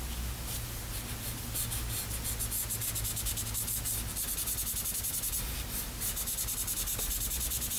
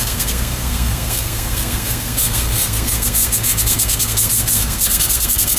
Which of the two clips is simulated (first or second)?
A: second